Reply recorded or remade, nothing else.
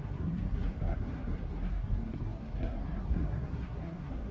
remade